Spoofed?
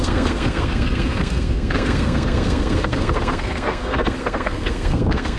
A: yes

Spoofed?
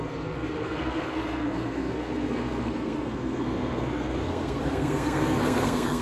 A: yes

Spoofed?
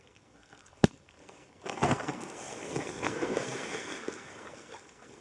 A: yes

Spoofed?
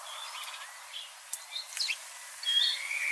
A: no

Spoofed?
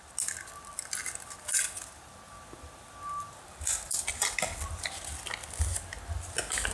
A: no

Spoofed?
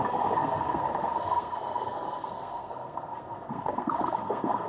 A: yes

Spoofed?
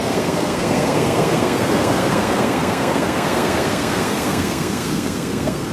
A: yes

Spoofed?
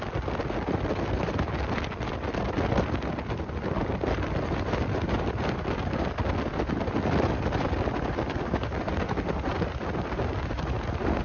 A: no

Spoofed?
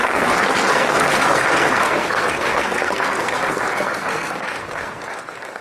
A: yes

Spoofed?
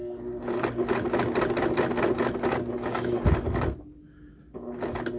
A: no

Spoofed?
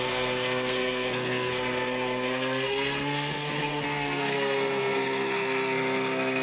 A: yes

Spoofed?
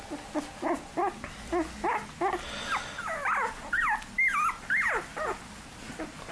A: no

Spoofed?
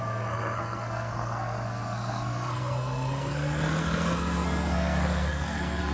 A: yes